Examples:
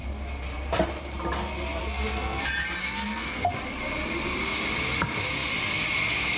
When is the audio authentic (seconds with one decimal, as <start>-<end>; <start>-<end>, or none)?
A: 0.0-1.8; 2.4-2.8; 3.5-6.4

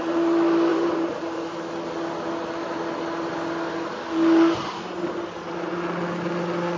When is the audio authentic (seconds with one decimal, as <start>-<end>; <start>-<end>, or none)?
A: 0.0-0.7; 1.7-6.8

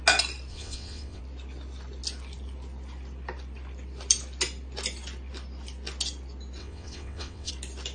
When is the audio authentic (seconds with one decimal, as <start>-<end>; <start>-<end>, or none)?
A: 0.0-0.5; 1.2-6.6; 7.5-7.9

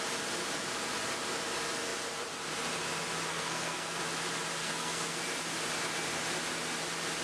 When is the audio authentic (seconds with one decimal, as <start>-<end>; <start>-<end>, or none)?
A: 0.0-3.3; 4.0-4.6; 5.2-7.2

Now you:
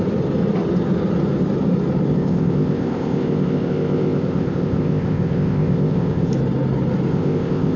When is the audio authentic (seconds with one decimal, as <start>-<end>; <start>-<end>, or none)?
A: 0.0-2.1; 6.3-7.1

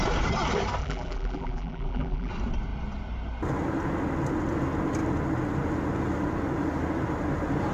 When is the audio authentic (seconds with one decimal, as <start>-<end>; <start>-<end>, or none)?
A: 0.0-0.8; 2.3-7.7